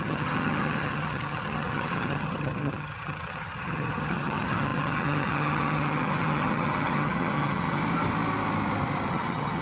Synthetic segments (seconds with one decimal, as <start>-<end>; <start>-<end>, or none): 0.0-7.8; 9.1-9.6